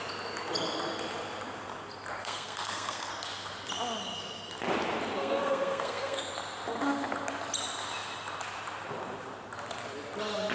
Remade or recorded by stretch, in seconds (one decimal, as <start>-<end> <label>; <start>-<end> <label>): 0.0-2.2 recorded; 2.2-3.1 remade; 3.1-5.2 recorded; 5.2-6.3 remade; 6.3-10.5 recorded

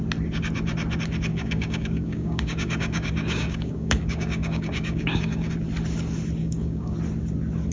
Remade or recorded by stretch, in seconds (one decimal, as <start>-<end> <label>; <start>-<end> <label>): 0.0-1.3 recorded; 1.3-5.5 remade; 5.5-6.4 recorded; 6.4-6.9 remade; 6.9-7.7 recorded

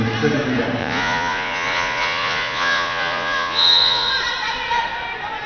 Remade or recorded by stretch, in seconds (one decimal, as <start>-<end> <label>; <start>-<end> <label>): 0.0-0.8 recorded; 0.8-4.1 remade; 4.1-5.5 recorded